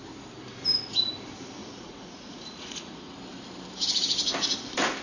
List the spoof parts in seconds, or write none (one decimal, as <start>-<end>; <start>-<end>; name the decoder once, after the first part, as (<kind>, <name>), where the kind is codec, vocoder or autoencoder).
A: 1.6-3.1 (vocoder, Vocos)